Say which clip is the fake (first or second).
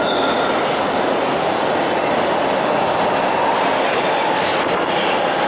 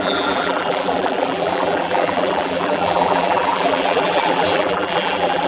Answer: second